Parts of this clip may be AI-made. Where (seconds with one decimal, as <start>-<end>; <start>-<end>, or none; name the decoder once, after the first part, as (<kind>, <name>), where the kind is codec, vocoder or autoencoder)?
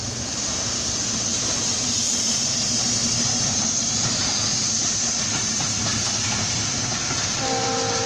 1.3-2.0 (vocoder, BigVGAN v2); 3.0-8.1